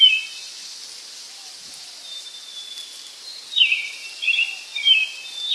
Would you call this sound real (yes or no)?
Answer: yes